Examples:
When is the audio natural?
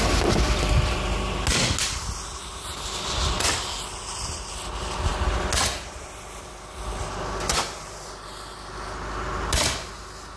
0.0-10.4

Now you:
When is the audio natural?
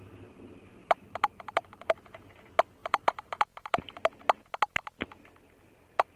0.0-0.8; 2.4-2.8; 3.9-6.2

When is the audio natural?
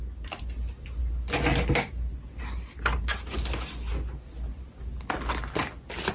0.0-6.1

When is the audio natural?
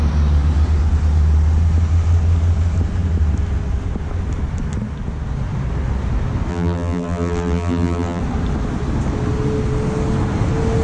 0.0-6.5; 8.2-10.8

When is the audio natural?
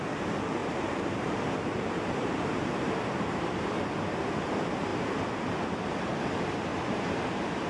0.0-0.6; 3.6-6.7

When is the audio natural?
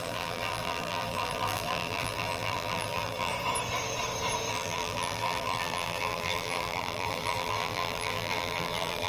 3.3-4.5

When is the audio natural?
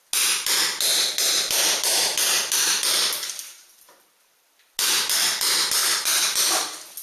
0.0-5.8; 6.4-7.0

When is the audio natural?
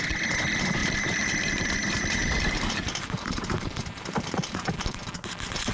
0.0-0.8; 4.2-5.7